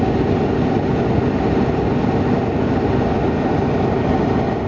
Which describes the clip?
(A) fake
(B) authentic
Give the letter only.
B